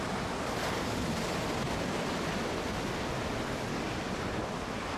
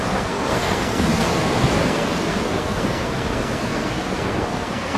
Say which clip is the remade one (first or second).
second